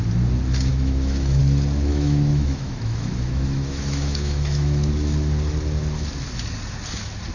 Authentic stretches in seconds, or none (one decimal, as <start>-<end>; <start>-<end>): 0.0-0.7; 1.4-1.9; 4.9-7.3